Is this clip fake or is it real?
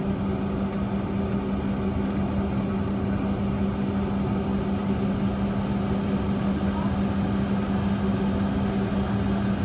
real